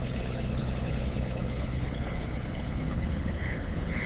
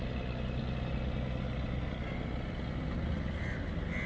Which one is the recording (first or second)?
second